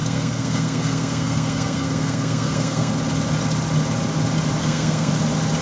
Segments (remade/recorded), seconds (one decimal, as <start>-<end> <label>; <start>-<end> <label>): 0.0-2.9 remade; 2.9-4.6 recorded; 4.6-5.1 remade; 5.1-5.6 recorded